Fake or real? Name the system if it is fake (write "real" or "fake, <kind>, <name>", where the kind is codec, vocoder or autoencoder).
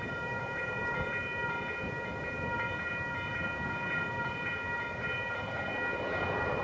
real